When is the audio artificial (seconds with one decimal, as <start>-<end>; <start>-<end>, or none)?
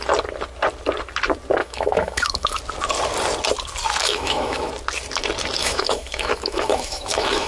1.6-2.6; 4.0-4.7; 5.6-7.5